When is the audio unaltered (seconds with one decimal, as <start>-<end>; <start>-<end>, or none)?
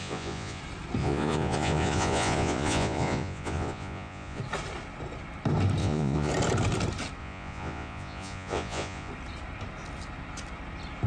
0.6-1.0; 4.4-5.8; 6.3-7.2; 9.1-11.1